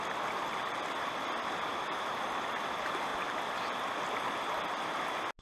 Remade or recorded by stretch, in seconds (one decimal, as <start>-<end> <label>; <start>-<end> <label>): 0.0-1.7 remade; 1.7-2.7 recorded; 2.7-3.1 remade; 3.1-5.4 recorded